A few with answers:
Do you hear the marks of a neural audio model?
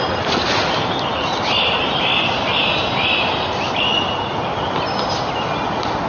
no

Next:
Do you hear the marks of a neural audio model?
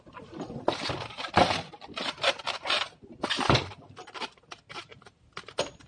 no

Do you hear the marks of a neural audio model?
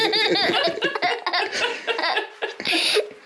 no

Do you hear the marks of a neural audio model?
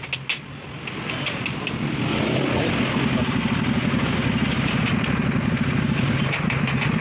no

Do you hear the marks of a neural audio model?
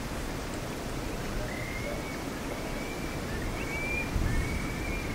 no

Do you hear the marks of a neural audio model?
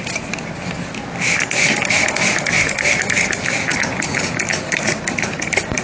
no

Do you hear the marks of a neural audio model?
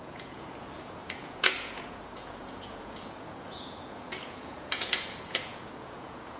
yes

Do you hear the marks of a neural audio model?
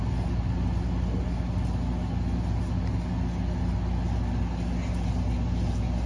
no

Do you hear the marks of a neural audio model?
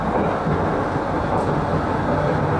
no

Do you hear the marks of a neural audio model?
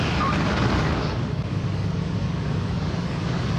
yes